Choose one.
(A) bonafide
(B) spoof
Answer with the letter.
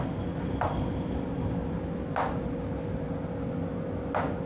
A